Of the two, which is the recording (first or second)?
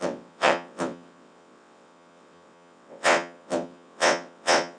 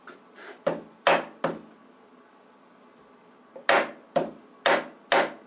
second